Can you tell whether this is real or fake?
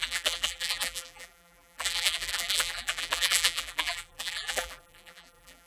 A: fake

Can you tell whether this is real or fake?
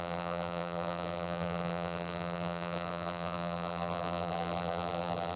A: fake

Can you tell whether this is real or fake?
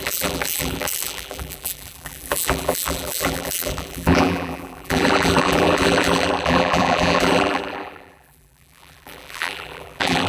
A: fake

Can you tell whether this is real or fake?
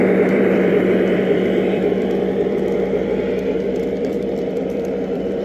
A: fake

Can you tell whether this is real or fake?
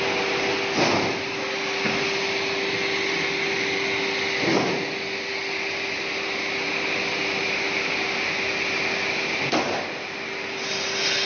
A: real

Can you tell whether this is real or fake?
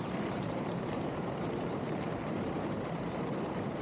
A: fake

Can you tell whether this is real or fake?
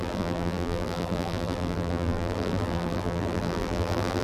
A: fake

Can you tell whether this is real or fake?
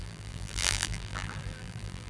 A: fake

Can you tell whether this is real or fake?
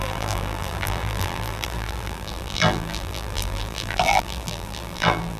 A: fake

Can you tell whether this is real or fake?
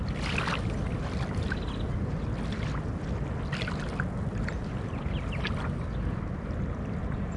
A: real